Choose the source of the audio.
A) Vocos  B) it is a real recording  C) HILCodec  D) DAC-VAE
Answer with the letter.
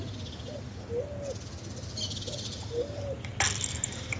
B